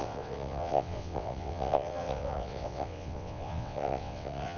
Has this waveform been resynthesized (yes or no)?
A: yes